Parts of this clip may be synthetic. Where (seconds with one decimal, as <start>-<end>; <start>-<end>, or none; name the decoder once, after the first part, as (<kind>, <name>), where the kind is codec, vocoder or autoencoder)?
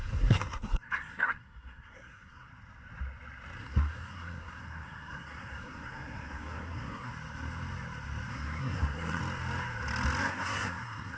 0.0-2.5 (codec, SNAC); 3.6-7.1; 8.3-9.2; 10.2-11.2